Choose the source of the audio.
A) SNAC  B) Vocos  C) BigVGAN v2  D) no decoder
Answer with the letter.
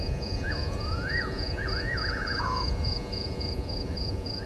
B